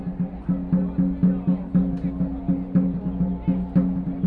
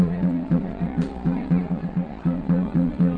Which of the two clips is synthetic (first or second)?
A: second